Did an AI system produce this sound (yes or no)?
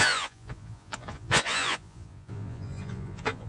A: yes